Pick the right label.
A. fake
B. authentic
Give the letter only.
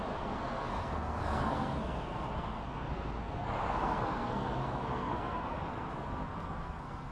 A